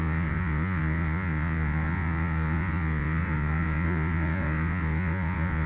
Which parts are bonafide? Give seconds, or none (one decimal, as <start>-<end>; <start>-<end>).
none